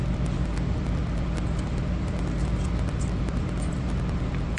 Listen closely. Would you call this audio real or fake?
fake